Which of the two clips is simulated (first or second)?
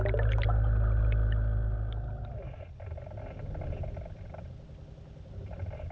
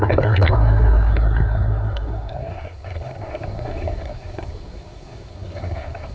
second